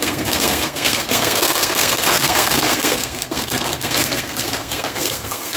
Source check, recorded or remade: remade